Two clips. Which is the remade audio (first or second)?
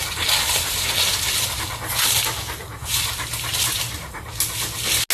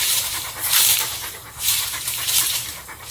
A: second